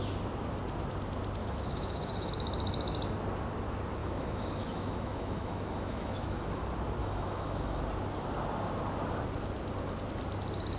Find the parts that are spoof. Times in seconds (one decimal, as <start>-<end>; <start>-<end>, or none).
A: 1.4-2.3; 4.0-6.6; 7.0-7.8